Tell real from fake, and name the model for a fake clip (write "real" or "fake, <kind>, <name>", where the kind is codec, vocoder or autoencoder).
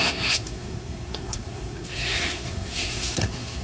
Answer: fake, codec, SNAC